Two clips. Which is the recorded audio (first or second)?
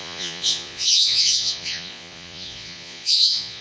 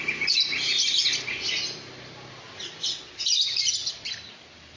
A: second